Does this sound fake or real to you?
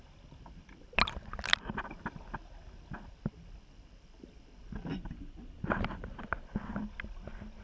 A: real